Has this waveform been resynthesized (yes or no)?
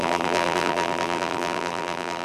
yes